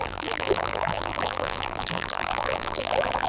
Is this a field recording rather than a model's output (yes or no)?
no